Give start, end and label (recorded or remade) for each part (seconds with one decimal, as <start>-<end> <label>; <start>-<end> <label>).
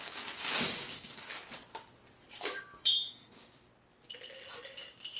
0.0-1.3 remade; 1.3-2.4 recorded; 2.4-3.7 remade; 3.7-5.2 recorded